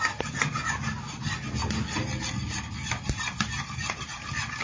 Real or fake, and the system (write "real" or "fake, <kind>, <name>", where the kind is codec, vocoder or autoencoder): real